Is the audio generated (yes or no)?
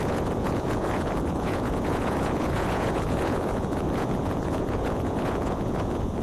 yes